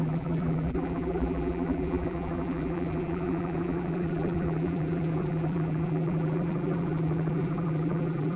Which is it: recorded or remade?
remade